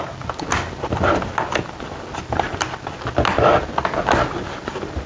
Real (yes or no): yes